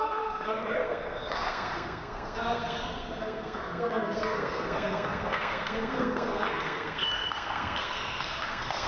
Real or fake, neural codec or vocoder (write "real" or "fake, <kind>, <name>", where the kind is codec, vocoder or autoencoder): fake, codec, SNAC